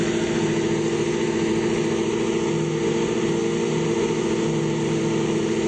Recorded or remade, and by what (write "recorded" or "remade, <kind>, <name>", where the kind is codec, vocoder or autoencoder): recorded